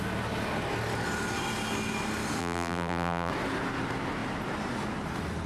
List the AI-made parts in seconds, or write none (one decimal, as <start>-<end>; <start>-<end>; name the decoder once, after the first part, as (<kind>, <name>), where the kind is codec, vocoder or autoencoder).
2.4-3.3 (vocoder, BigVGAN v2)